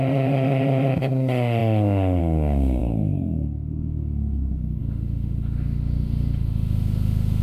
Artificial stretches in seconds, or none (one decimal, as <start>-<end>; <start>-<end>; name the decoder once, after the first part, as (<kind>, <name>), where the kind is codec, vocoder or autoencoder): 0.0-7.4 (autoencoder, DAC-VAE)